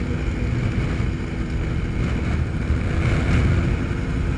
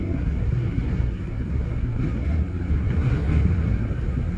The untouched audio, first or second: first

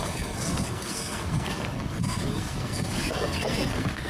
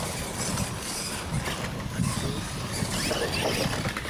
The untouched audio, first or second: second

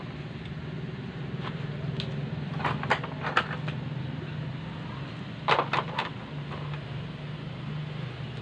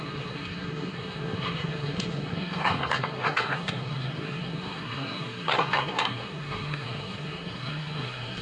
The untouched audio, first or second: first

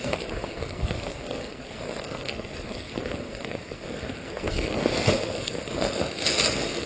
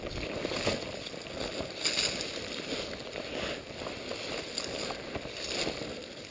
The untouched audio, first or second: second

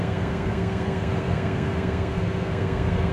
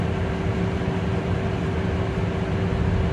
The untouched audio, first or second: second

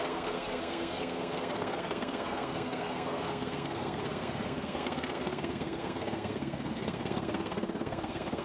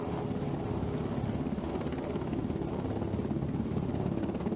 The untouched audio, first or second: second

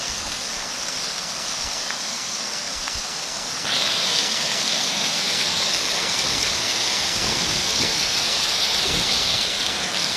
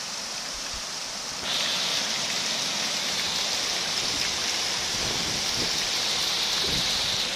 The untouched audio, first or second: second